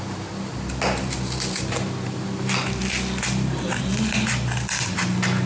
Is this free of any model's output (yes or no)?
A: yes